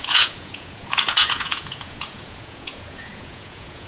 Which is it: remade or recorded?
remade